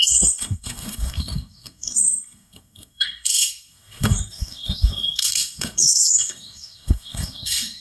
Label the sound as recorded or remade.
remade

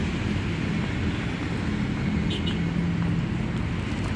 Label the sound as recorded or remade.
recorded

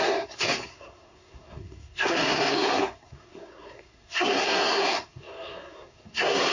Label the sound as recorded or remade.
remade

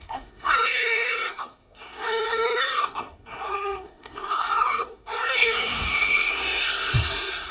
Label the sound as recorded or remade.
remade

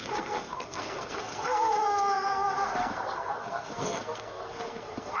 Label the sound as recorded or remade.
remade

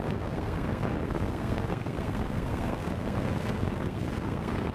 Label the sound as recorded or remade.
remade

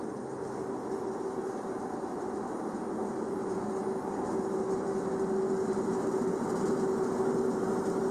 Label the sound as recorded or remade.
recorded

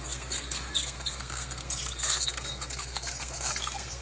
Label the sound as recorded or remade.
remade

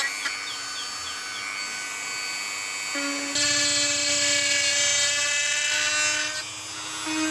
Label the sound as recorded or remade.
recorded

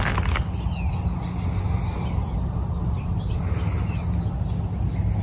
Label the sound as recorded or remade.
recorded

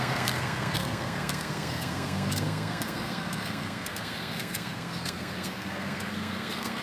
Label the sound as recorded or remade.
remade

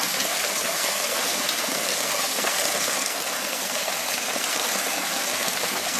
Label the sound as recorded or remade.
remade